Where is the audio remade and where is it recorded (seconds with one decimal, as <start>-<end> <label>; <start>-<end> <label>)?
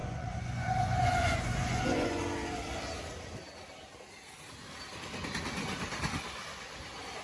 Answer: 0.0-2.2 remade; 2.2-7.2 recorded